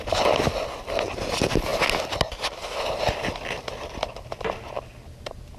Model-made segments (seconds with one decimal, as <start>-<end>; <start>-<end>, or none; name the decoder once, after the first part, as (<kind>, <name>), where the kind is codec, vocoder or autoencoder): none